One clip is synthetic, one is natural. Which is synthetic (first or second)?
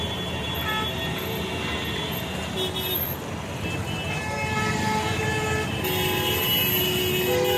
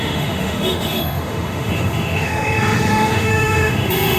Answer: second